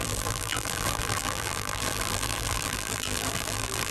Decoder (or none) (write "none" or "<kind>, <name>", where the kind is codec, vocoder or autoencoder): vocoder, BigVGAN v2